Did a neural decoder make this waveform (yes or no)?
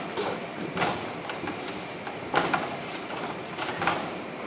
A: no